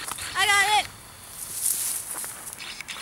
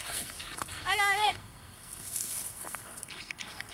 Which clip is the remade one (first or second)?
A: second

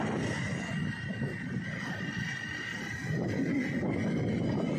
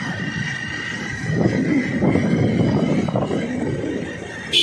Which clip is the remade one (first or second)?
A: second